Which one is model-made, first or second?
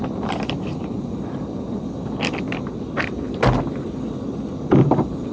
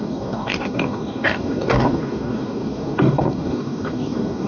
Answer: second